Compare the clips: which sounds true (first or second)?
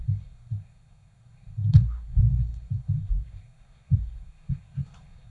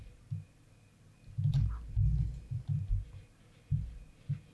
second